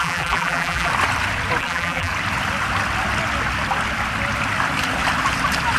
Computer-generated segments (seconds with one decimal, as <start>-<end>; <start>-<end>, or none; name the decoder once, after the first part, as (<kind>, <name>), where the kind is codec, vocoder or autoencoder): 0.0-0.9 (vocoder, BigVGAN v2); 1.6-2.1